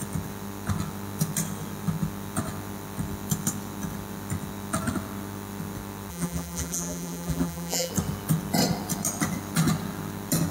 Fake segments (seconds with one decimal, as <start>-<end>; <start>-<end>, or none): 6.1-7.9